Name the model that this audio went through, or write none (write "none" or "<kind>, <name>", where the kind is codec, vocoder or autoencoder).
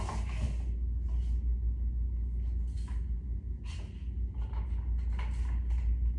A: none